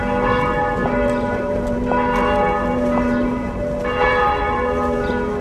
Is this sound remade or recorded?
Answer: remade